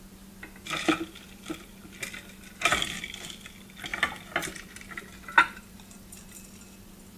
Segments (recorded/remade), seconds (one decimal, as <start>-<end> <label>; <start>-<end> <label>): 0.0-7.2 recorded